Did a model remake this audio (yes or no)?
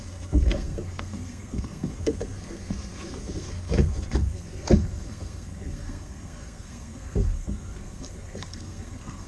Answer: yes